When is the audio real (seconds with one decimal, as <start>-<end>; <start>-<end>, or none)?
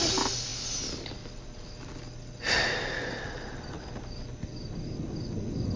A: 0.0-5.8